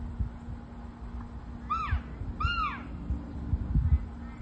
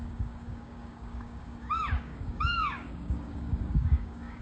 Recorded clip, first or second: first